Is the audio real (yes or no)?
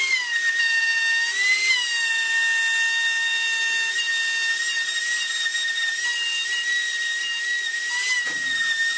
yes